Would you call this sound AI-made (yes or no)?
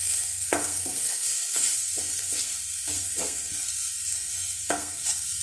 yes